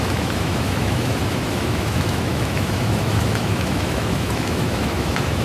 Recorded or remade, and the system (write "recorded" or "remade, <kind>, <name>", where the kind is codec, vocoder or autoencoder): remade, autoencoder, DAC-VAE